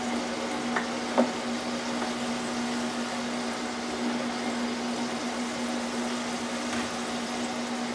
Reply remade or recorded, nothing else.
recorded